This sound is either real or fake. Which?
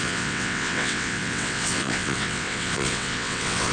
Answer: fake